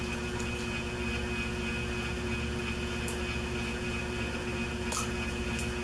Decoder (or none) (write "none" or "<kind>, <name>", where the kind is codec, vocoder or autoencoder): none